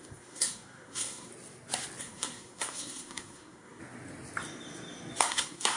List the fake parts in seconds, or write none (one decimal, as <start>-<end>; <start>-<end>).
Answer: 0.0-1.3; 2.0-3.8; 5.2-5.8